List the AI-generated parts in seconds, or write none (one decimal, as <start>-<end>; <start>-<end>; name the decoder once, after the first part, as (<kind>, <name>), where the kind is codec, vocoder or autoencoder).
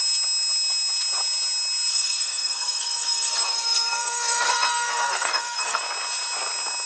1.9-5.8 (codec, SNAC)